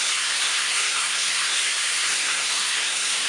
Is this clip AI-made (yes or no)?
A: yes